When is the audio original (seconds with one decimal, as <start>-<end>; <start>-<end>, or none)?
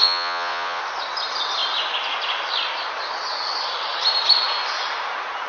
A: 0.8-5.5